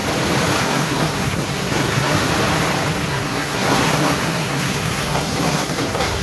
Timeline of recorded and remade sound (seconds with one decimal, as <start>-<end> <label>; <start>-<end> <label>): 0.0-0.6 recorded; 0.6-2.3 remade; 2.3-3.1 recorded; 3.1-6.2 remade